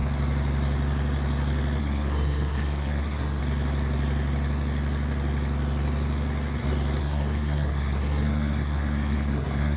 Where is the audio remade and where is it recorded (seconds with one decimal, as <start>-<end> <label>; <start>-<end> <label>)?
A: 0.0-1.8 recorded; 1.8-3.4 remade; 3.4-7.0 recorded; 7.0-9.8 remade